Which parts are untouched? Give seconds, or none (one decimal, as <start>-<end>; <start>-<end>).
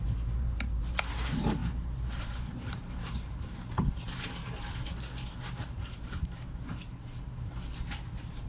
4.4-5.6